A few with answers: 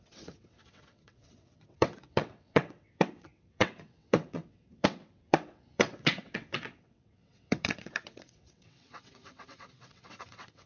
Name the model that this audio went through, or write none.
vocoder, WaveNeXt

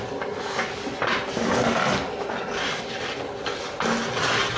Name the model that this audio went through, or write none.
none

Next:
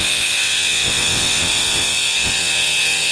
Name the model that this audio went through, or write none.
vocoder, WaveNeXt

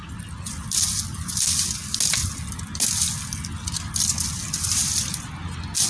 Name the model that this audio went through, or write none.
none